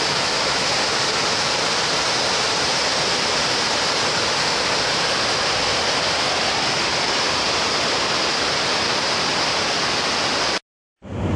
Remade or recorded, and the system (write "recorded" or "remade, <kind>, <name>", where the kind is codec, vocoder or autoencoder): recorded